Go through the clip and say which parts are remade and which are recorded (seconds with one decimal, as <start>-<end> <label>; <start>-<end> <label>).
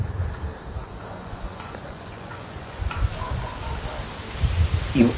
0.0-0.8 recorded; 0.8-3.7 remade; 3.7-5.2 recorded